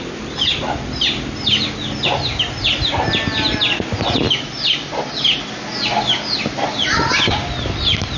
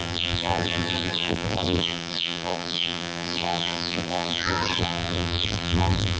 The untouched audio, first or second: first